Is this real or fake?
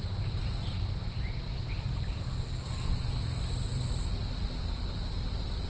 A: real